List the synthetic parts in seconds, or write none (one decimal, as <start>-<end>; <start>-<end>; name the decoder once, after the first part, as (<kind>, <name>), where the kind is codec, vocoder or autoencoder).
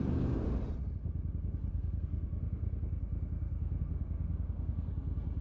1.7-4.9 (codec, SNAC)